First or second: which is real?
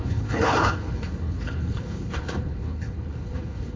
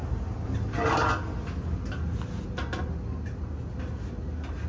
second